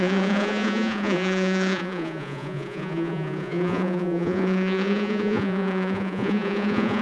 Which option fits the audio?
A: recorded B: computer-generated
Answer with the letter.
B